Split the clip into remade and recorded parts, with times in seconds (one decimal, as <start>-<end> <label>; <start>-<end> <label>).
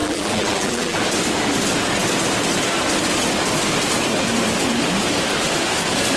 0.0-1.0 remade; 1.0-6.2 recorded